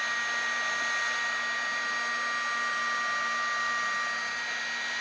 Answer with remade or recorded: recorded